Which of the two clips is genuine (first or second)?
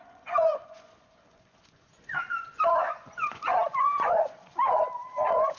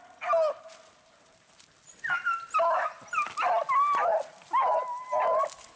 second